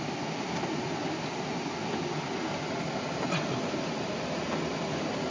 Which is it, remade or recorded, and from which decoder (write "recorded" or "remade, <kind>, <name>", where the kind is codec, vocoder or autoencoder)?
recorded